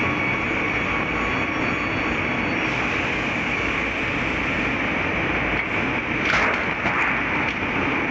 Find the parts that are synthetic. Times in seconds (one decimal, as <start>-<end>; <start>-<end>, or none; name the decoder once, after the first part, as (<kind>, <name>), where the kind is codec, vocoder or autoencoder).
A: 3.1-3.9 (codec, DAC)